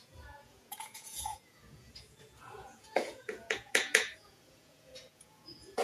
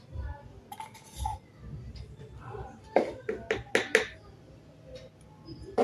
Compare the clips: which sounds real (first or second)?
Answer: second